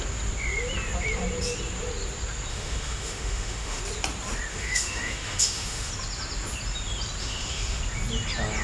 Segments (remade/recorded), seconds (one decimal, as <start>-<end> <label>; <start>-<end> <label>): 0.0-2.5 recorded; 2.5-3.8 remade; 3.8-4.5 recorded; 4.5-5.9 remade; 5.9-7.2 recorded; 7.2-7.8 remade; 7.8-8.6 recorded